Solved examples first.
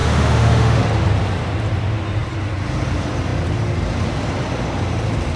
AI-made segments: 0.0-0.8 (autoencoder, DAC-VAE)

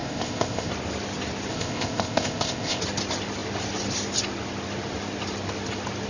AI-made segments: 0.0-0.7 (codec, ZipCodec); 1.5-2.8

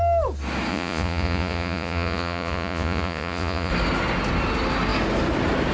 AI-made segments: 0.7-3.7 (vocoder, Vocos)

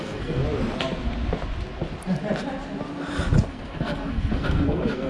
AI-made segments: 0.0-0.4 (codec, SNAC); 3.5-5.1

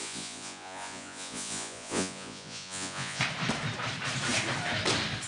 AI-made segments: 0.0-3.2 (vocoder, Vocos)

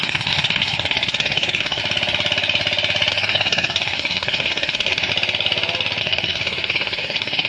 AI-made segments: 0.0-1.8 (codec, SNAC); 3.1-5.1; 6.0-7.5